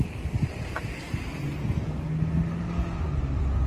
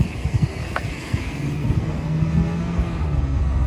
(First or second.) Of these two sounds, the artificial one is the second